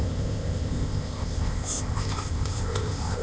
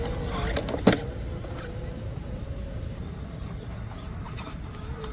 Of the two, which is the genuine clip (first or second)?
second